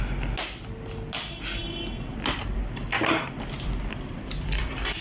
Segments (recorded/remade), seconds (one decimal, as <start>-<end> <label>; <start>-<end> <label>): 0.0-1.6 recorded; 1.6-4.6 remade; 4.6-5.0 recorded